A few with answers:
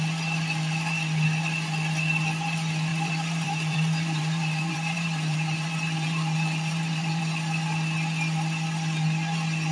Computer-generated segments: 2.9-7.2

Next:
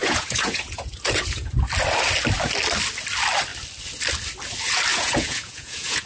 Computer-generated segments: 0.0-1.7; 4.9-6.1

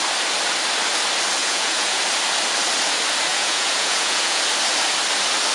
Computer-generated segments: 1.4-2.0; 3.3-4.4

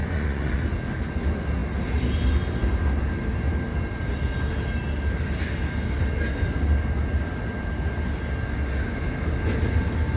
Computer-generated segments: 0.0-0.6